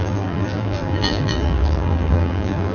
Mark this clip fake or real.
fake